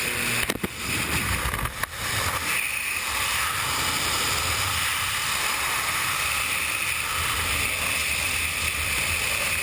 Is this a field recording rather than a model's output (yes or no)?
yes